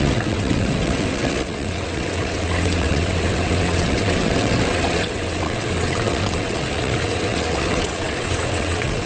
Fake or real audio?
fake